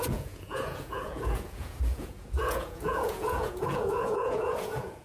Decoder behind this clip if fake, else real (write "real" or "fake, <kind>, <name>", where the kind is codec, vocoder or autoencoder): fake, vocoder, Vocos